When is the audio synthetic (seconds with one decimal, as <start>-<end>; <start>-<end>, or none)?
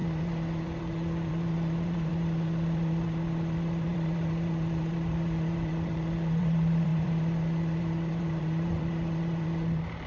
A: 0.0-10.1